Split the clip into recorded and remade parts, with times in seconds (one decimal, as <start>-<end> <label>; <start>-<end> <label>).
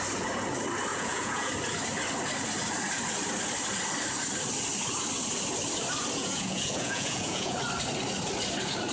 0.0-0.9 recorded; 0.9-1.5 remade; 1.5-6.2 recorded; 6.2-7.6 remade; 7.6-8.9 recorded